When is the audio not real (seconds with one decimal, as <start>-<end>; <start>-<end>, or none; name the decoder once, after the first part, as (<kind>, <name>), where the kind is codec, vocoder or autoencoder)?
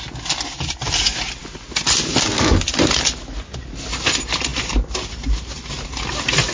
none